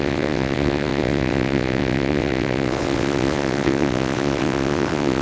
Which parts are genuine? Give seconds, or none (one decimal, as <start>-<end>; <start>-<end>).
none